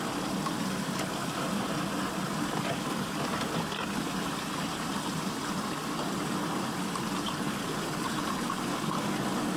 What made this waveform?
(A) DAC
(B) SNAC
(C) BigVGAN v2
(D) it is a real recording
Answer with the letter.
D